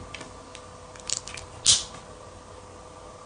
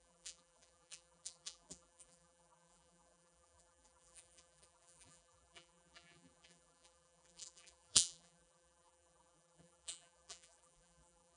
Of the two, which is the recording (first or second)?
first